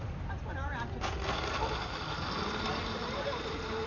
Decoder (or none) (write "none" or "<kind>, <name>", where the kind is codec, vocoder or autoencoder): none